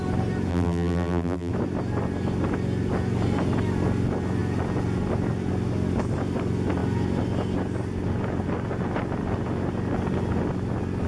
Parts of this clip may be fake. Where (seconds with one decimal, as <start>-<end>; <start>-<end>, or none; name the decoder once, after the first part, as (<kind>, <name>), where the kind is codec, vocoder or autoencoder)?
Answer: 0.5-1.5 (vocoder, BigVGAN v2)